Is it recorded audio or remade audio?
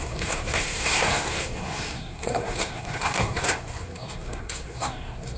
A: remade